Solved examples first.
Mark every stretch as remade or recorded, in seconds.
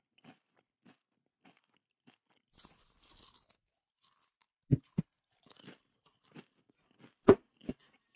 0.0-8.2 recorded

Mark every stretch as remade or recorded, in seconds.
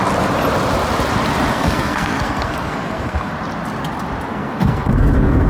0.0-1.5 recorded; 1.5-3.3 remade; 3.3-4.3 recorded; 4.3-5.5 remade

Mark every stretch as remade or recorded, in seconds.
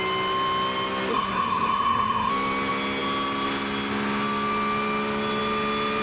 0.0-1.1 recorded; 1.1-2.3 remade; 2.3-6.0 recorded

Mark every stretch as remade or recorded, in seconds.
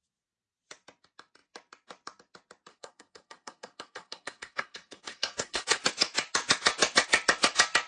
0.0-2.7 recorded; 2.7-5.8 remade; 5.8-7.9 recorded